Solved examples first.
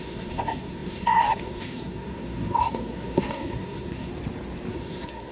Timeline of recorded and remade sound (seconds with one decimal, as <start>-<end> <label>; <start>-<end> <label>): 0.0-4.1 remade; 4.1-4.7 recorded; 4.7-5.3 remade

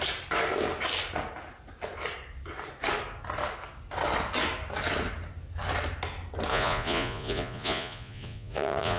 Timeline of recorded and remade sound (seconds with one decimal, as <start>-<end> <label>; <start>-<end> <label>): 0.0-6.5 recorded; 6.5-9.0 remade

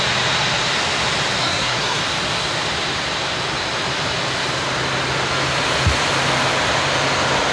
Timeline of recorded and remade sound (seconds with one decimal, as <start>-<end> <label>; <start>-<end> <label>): 0.0-1.4 recorded; 1.4-2.0 remade; 2.0-7.5 recorded

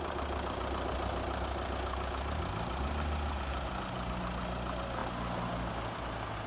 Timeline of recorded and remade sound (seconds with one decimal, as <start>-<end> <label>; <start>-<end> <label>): 0.0-6.5 recorded

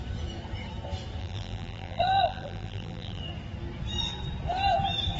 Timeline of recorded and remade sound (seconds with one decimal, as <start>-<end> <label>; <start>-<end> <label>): 0.0-1.2 recorded; 1.2-3.2 remade; 3.2-5.2 recorded

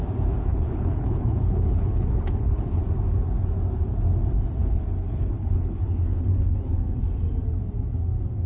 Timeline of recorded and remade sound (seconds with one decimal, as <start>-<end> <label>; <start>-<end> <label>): 0.0-0.5 recorded; 0.5-2.8 remade; 2.8-4.6 recorded; 4.6-6.7 remade; 6.7-8.5 recorded

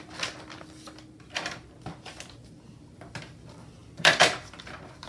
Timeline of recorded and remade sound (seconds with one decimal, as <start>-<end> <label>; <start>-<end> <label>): 0.0-3.8 recorded; 3.8-4.6 remade; 4.6-5.1 recorded

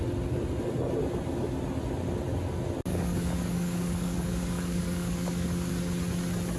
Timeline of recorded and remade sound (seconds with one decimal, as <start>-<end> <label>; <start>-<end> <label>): 0.0-2.9 recorded; 2.9-5.7 remade; 5.7-6.6 recorded